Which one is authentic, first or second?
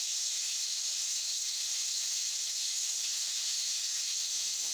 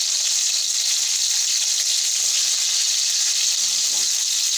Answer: second